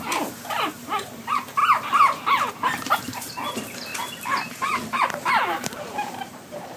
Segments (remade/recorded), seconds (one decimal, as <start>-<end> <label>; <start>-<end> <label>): 0.0-1.6 remade; 1.6-2.5 recorded; 2.5-3.9 remade; 3.9-5.4 recorded; 5.4-6.8 remade